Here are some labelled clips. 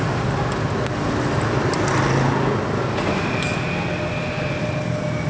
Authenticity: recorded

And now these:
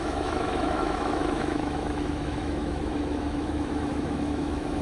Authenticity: remade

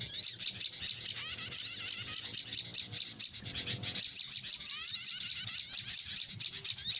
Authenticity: recorded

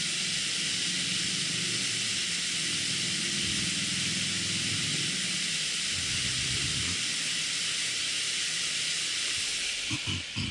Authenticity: recorded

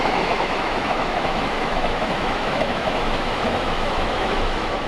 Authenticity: remade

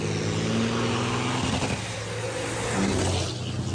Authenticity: recorded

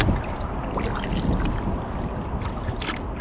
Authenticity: recorded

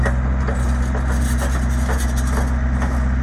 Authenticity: recorded